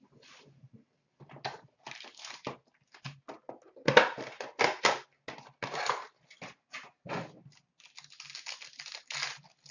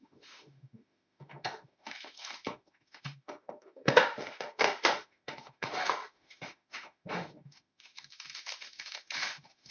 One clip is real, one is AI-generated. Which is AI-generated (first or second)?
second